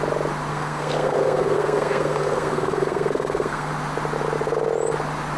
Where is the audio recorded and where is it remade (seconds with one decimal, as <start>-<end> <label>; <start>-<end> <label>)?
0.0-0.5 recorded; 0.5-3.7 remade; 3.7-5.4 recorded